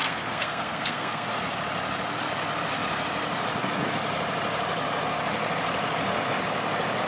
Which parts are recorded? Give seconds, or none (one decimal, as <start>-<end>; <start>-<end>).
1.3-7.1